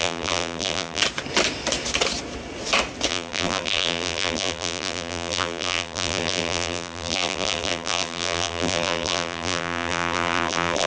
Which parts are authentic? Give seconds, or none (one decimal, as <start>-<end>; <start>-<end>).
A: 1.0-3.1